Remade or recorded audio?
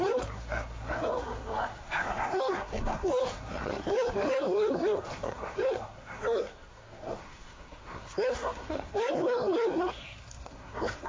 remade